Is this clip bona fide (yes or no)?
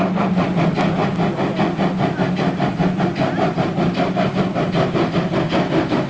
yes